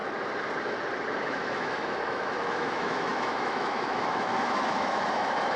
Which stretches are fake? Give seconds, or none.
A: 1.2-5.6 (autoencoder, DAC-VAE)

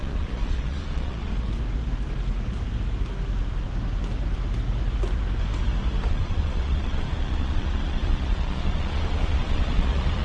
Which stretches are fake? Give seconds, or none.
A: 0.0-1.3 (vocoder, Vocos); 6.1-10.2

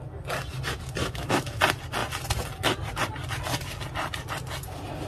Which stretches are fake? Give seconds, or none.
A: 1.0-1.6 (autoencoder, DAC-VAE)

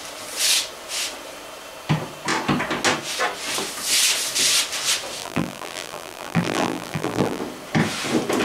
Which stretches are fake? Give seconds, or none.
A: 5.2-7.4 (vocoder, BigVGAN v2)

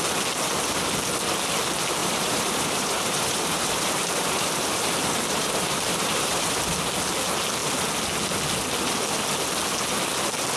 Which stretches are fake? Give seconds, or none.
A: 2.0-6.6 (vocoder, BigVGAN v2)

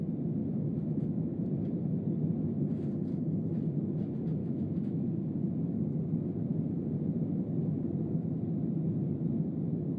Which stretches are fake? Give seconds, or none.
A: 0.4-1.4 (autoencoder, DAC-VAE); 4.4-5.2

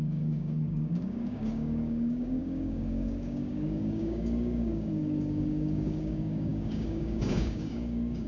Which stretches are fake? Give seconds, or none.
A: 0.0-8.3 (codec, DAC)